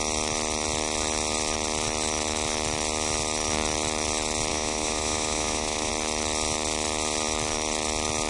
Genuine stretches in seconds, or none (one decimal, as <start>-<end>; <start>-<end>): 0.0-4.5; 5.9-8.3